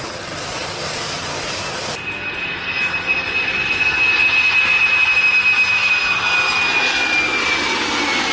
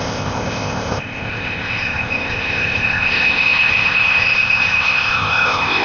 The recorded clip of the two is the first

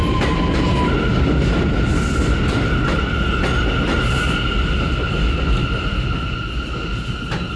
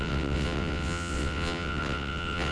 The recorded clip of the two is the first